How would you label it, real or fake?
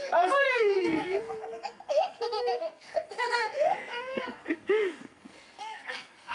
fake